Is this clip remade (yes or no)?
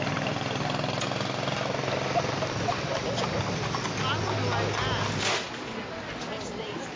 no